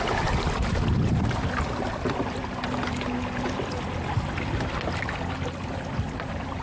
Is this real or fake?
real